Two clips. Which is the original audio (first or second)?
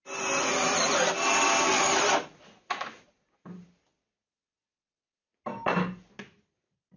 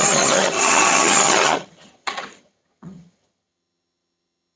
first